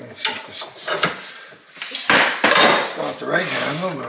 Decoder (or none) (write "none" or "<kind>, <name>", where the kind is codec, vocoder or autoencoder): none